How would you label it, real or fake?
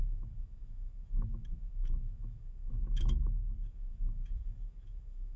fake